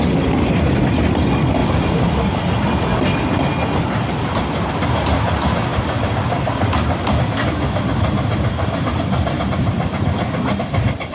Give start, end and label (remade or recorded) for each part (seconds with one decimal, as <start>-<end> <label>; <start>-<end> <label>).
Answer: 0.0-5.7 recorded; 5.7-9.0 remade; 9.0-11.1 recorded

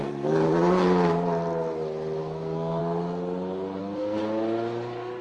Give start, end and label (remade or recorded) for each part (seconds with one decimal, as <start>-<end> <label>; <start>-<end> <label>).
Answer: 0.0-0.5 remade; 0.5-2.2 recorded; 2.2-2.8 remade; 2.8-3.8 recorded; 3.8-4.2 remade; 4.2-5.2 recorded

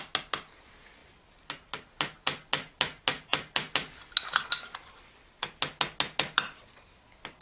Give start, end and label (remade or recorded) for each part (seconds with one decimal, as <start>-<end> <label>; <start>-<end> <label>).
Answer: 0.0-7.4 recorded

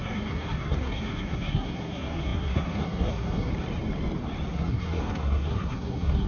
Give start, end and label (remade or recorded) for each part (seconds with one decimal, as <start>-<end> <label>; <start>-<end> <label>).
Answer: 0.0-3.5 remade; 3.5-4.5 recorded; 4.5-6.3 remade

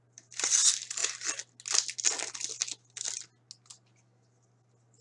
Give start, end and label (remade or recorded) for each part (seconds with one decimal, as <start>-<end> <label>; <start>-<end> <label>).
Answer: 0.0-5.0 recorded

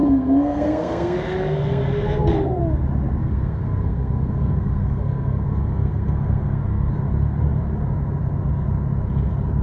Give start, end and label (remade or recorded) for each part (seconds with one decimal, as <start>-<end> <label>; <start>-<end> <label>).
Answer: 0.0-2.6 remade; 2.6-3.2 recorded; 3.2-6.9 remade; 6.9-9.6 recorded

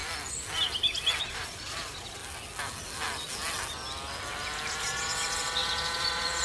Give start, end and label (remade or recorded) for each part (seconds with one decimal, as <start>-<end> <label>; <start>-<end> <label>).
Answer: 0.0-1.2 recorded; 1.2-2.2 remade; 2.2-4.8 recorded; 4.8-6.4 remade